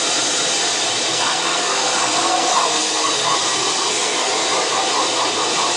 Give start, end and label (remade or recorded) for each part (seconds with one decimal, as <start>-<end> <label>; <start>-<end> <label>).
0.0-1.1 recorded; 1.1-4.3 remade; 4.3-5.8 recorded